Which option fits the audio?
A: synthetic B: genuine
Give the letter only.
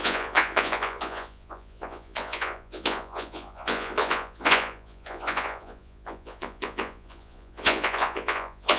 A